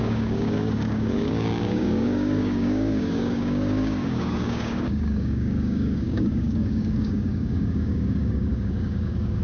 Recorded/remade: remade